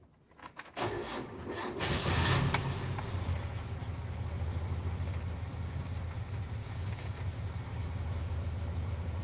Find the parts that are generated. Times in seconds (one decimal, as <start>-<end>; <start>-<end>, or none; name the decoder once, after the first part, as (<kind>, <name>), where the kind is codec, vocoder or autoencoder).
0.4-1.4 (codec, DAC); 5.5-6.0; 6.6-7.2